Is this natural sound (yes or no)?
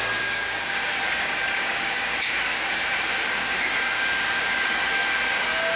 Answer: no